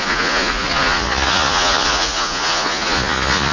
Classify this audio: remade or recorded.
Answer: remade